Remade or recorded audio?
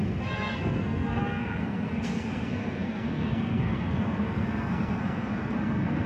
remade